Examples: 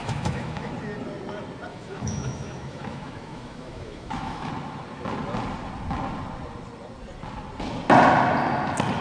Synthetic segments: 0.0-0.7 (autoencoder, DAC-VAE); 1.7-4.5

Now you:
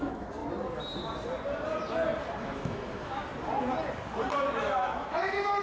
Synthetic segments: 0.0-0.4 (autoencoder, DAC-VAE); 2.4-3.3; 4.6-5.6

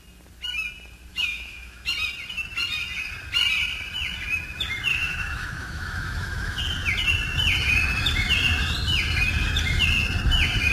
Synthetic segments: 1.1-1.9 (autoencoder, DAC-VAE); 4.9-6.6

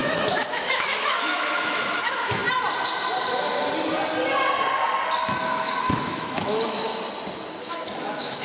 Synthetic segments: 0.0-2.4 (autoencoder, DAC-VAE); 5.4-6.9; 7.6-8.4